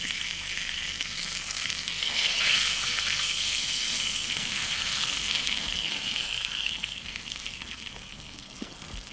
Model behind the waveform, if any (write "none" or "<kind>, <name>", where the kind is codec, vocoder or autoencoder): codec, SNAC